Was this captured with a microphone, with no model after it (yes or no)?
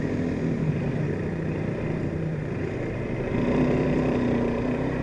no